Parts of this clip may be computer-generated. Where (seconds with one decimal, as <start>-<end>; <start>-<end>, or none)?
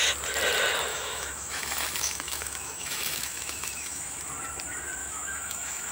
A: 0.9-4.2; 5.0-5.9